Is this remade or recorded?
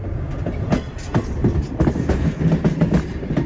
recorded